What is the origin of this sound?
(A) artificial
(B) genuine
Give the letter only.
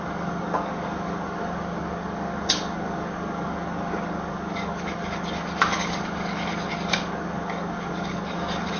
A